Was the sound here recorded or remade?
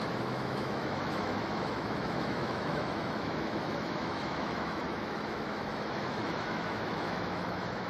remade